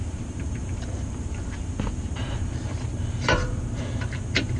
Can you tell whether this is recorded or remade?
remade